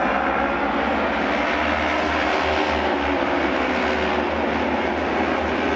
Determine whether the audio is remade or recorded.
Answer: recorded